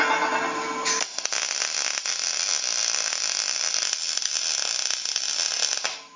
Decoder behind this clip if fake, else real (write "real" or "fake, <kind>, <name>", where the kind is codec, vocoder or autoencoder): real